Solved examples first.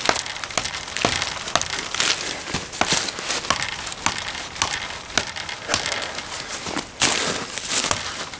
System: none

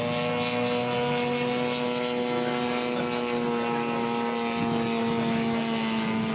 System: none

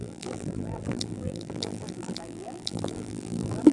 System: vocoder, BigVGAN v2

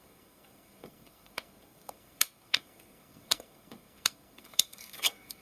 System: codec, SNAC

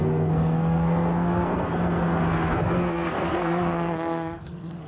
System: codec, SNAC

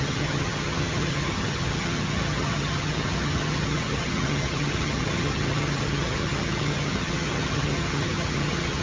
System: vocoder, HiFi-GAN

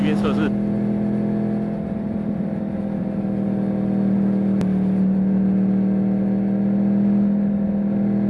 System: none